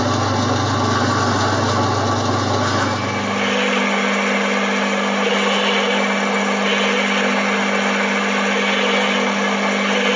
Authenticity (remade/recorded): recorded